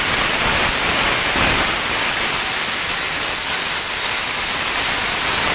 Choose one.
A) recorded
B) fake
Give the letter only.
B